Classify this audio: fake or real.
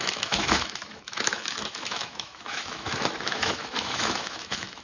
fake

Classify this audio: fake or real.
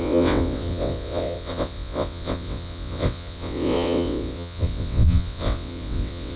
fake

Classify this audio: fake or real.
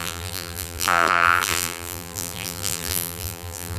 fake